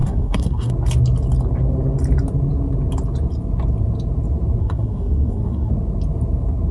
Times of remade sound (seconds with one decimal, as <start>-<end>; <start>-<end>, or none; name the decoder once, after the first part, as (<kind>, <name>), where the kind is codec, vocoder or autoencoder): 0.0-0.7 (codec, SNAC); 4.6-5.7